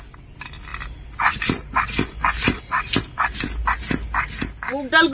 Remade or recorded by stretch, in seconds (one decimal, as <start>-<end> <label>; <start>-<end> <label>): 0.0-5.1 recorded